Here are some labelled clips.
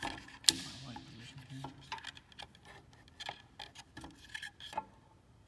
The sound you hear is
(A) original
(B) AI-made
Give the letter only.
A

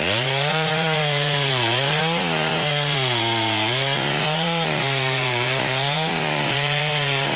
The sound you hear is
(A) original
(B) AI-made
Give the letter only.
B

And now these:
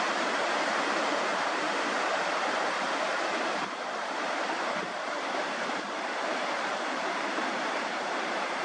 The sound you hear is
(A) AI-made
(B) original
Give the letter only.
A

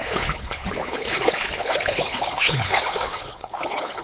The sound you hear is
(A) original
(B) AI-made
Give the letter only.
B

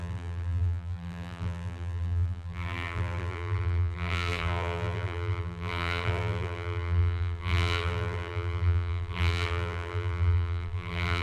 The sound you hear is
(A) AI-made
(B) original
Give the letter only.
A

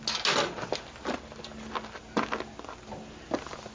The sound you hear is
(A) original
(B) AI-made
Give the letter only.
A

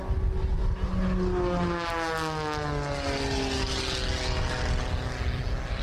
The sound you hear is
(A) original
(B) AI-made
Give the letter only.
A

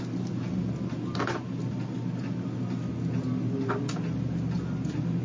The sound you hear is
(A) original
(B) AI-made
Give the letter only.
A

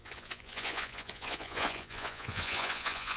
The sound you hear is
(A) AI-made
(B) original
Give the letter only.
A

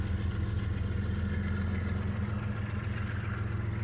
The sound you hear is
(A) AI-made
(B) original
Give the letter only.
B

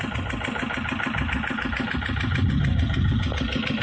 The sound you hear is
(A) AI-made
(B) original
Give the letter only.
B